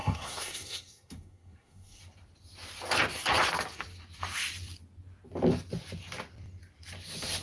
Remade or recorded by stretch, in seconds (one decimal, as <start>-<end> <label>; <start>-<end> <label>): 0.0-2.0 remade; 2.0-7.4 recorded